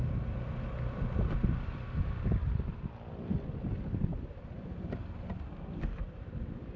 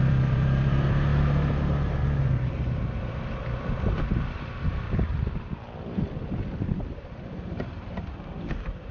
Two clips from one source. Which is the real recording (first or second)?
first